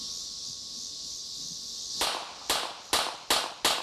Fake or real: real